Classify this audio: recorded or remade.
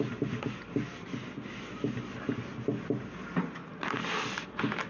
recorded